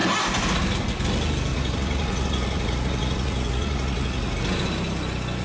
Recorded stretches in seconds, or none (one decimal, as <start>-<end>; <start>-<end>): 0.0-1.5; 4.3-5.4